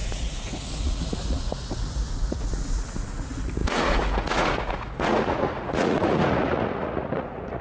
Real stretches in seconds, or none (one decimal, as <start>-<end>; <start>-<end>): none